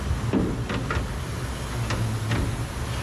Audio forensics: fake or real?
real